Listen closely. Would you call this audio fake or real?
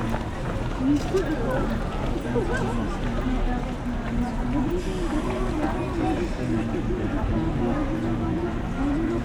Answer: real